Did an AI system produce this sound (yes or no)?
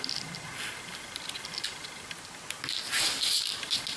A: no